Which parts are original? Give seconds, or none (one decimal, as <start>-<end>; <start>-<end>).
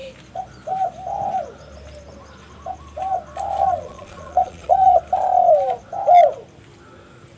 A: 0.0-3.6; 5.0-7.4